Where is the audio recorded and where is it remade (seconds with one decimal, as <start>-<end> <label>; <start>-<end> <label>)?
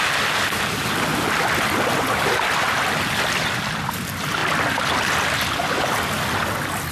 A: 0.0-6.9 recorded